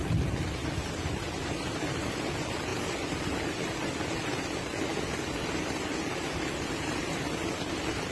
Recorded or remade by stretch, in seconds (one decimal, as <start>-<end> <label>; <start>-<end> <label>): 0.0-8.1 recorded